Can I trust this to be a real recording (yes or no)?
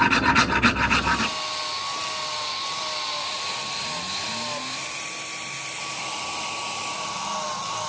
yes